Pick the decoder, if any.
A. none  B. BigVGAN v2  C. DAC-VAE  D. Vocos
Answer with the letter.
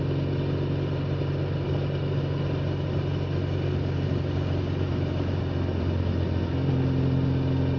A